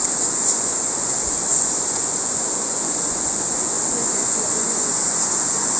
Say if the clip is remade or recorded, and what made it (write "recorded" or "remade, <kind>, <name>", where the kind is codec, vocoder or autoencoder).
remade, vocoder, Vocos